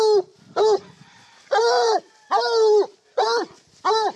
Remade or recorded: recorded